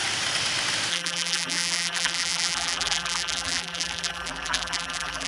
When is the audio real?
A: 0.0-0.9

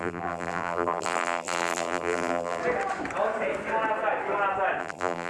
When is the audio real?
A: 2.6-4.8

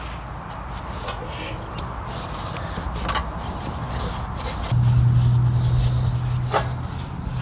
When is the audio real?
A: 0.0-7.4